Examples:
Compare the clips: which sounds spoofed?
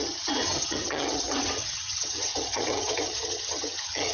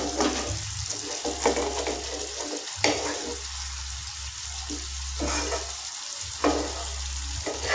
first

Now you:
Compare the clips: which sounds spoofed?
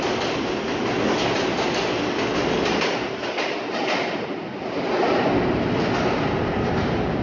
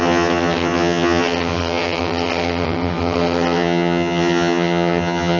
second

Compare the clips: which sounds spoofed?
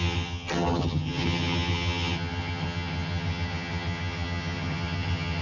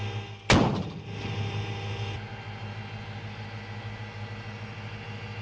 first